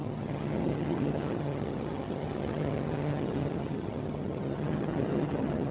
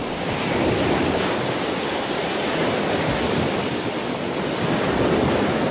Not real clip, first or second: first